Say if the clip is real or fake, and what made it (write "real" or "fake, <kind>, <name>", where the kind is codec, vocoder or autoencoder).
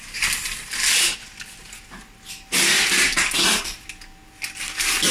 real